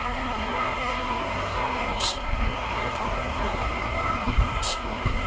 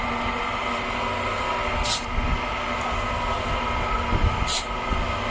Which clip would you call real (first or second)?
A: second